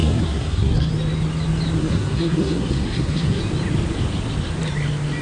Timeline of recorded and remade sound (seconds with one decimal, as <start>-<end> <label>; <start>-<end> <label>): 0.0-0.9 remade; 0.9-1.8 recorded; 1.8-3.4 remade; 3.4-5.2 recorded